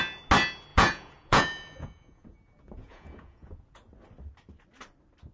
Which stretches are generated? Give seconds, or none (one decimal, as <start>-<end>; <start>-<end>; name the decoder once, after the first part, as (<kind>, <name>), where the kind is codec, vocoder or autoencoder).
0.7-3.9 (vocoder, Vocos)